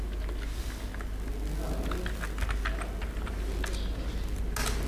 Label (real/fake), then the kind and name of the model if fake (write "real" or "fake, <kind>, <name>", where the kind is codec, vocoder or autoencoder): real